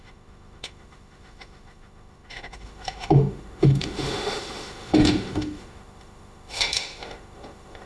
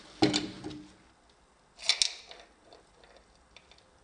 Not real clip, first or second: first